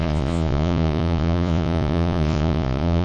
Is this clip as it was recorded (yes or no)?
no